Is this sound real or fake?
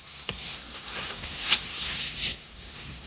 fake